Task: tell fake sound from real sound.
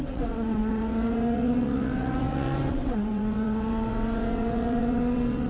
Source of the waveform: fake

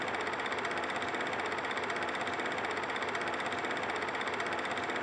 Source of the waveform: real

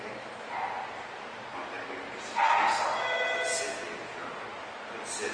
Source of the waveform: real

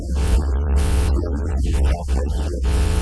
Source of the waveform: fake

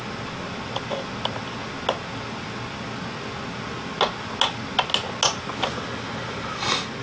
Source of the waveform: real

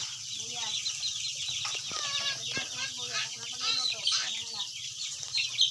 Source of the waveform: real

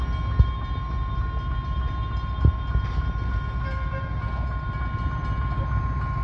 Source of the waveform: real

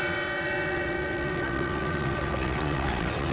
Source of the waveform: fake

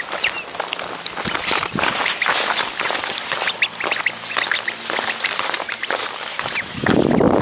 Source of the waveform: real